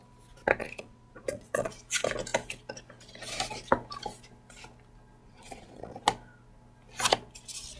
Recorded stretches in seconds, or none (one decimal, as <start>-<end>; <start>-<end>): 0.0-0.6; 1.7-5.2; 6.0-7.8